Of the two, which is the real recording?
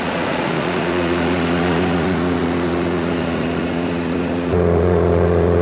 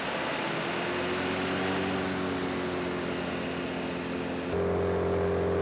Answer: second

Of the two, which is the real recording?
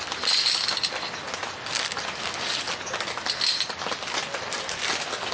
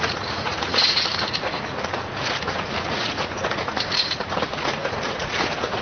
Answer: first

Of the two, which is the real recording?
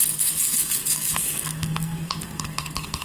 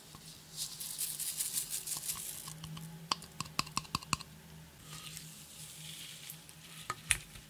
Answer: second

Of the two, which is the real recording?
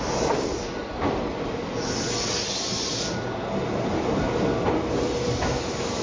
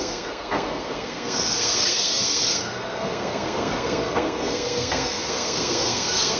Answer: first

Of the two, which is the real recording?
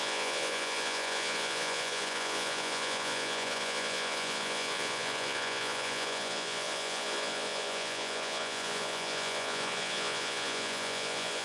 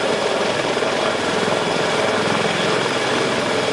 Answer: second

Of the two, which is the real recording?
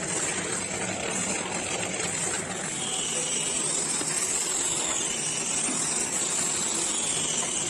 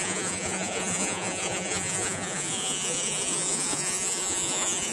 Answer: first